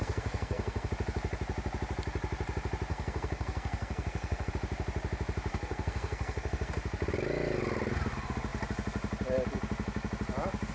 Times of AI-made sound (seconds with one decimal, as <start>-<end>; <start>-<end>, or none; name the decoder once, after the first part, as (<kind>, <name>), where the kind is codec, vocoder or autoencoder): 0.0-0.9 (codec, SNAC); 2.9-4.5; 5.5-6.7